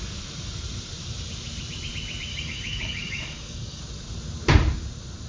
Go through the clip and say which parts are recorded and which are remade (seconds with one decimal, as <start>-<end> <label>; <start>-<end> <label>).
0.0-2.3 recorded; 2.3-3.8 remade; 3.8-5.3 recorded